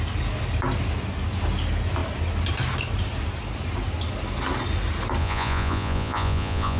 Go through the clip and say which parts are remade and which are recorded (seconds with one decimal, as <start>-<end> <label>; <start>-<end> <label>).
0.0-5.2 recorded; 5.2-6.8 remade